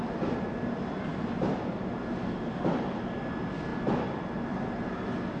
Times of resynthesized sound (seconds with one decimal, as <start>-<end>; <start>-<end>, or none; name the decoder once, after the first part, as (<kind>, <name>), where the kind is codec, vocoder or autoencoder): none